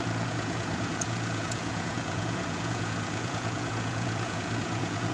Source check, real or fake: fake